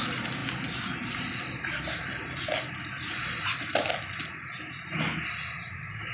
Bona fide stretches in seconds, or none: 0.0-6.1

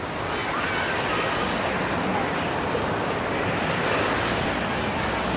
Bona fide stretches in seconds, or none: 0.0-5.4